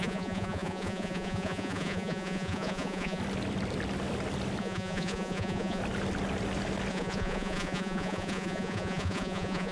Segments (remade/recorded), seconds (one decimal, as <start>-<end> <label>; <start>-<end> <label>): 0.0-3.2 remade; 3.2-4.6 recorded; 4.6-5.8 remade; 5.8-6.9 recorded; 6.9-9.7 remade